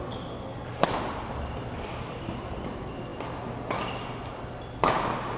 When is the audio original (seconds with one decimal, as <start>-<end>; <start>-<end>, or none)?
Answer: 0.0-5.4